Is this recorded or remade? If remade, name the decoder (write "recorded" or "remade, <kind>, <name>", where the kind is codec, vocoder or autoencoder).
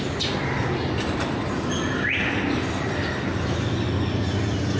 recorded